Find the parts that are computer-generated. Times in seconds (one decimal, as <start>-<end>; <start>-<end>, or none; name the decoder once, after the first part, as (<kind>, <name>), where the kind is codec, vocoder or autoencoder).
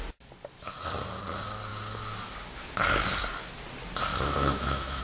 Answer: 4.1-5.0 (autoencoder, DAC-VAE)